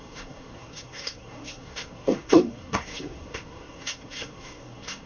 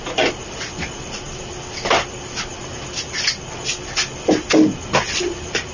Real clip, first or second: second